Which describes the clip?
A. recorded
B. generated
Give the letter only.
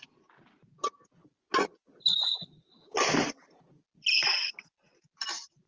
A